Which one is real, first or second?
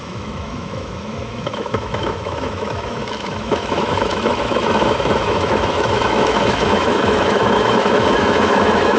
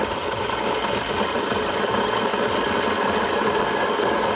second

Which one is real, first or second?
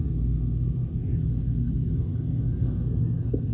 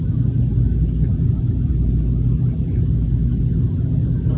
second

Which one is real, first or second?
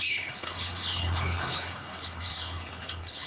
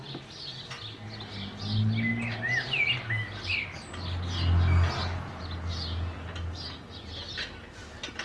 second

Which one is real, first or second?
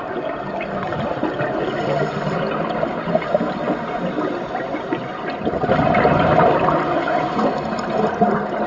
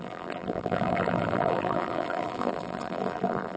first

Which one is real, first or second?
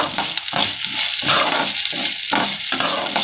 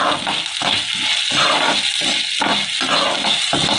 second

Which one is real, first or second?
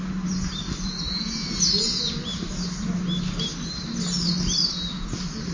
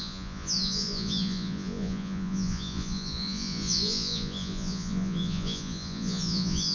first